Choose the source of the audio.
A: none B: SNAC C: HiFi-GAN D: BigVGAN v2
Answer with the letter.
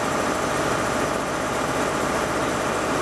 A